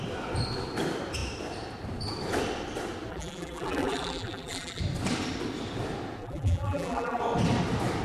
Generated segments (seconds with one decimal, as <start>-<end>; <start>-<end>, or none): 3.1-4.8; 6.2-7.2

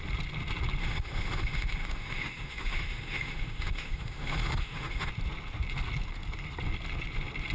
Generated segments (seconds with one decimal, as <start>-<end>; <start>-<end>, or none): 0.8-5.1

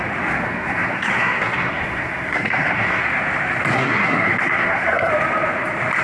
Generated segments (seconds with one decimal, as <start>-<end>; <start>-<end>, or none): 0.4-3.0; 3.7-5.1

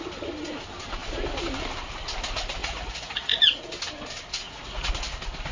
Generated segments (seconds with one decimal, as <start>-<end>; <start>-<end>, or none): 2.6-3.7; 4.4-4.9

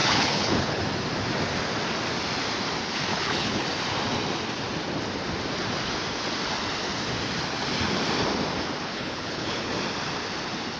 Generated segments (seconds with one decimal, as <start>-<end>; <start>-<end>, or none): 0.0-0.8; 3.1-3.6; 8.8-9.7

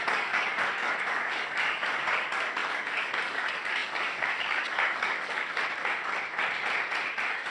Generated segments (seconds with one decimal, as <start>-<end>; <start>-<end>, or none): 0.0-5.6; 7.1-7.5